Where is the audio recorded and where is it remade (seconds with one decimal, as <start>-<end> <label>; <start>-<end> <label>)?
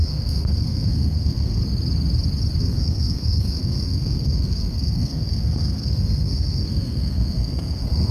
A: 0.0-1.6 remade; 1.6-2.6 recorded; 2.6-8.1 remade